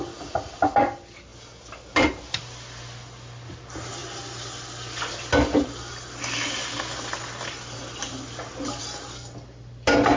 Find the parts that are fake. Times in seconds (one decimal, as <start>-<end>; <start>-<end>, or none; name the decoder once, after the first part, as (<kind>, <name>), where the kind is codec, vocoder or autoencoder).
none